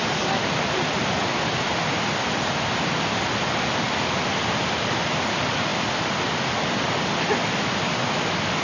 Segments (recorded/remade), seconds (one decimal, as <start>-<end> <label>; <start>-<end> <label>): 0.0-8.6 recorded